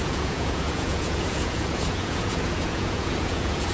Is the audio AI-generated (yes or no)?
yes